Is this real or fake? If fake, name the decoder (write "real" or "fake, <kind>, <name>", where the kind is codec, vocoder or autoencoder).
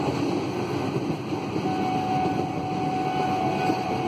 real